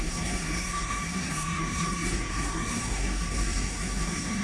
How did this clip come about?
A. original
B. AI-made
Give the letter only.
B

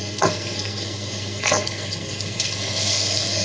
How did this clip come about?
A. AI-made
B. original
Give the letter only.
A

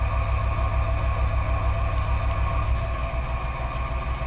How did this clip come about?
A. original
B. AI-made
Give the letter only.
A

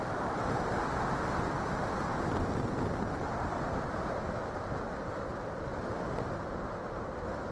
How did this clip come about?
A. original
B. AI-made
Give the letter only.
A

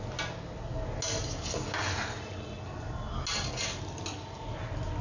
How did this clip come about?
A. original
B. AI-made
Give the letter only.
A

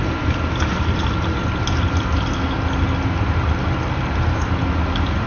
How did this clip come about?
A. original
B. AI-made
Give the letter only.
A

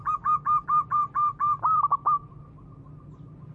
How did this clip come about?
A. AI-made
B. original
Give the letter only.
B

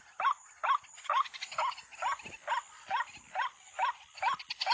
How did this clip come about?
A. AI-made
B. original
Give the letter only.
B